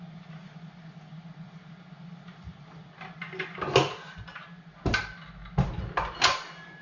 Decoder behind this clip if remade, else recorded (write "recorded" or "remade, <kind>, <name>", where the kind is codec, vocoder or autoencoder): recorded